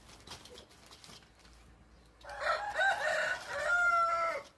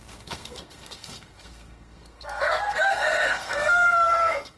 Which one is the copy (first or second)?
second